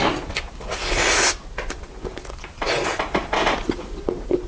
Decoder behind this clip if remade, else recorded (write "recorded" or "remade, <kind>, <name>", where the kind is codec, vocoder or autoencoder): recorded